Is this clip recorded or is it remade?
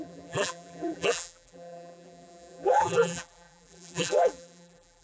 remade